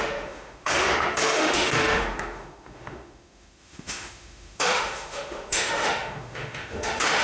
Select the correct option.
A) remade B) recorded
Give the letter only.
A